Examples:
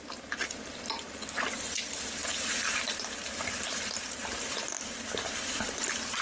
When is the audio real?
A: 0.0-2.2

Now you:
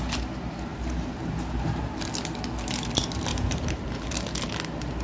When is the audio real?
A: 0.0-0.7; 2.1-3.3; 4.1-5.0

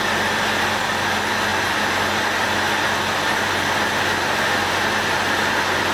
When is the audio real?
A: 0.0-1.5; 2.5-5.9

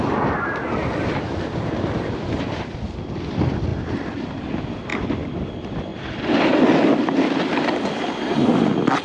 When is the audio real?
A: 0.0-3.7; 4.4-4.9; 5.5-9.0

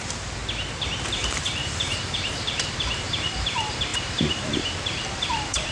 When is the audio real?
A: 0.4-1.1

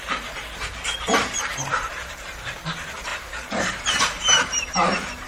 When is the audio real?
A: none

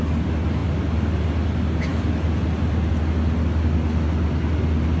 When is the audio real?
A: 0.0-5.0

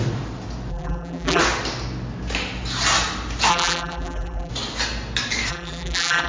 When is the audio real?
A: 0.0-0.7; 1.4-3.5; 4.5-5.5